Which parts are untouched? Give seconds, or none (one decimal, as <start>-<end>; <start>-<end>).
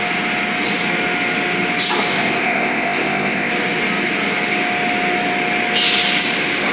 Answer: 0.0-2.1; 3.5-6.7